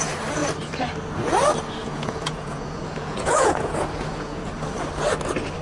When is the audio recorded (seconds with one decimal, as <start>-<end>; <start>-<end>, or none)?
0.0-1.8; 4.5-5.6